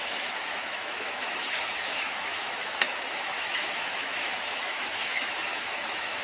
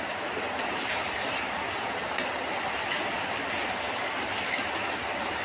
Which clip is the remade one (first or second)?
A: first